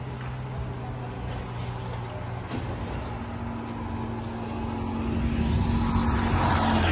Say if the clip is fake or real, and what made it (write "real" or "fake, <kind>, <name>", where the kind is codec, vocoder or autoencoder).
real